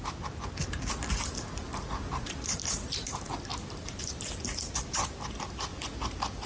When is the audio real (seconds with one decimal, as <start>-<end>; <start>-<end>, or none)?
0.0-6.5